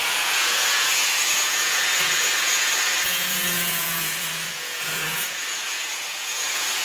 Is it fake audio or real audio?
fake